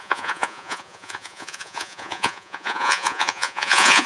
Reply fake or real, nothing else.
fake